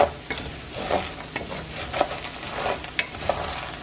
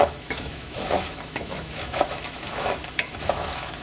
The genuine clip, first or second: first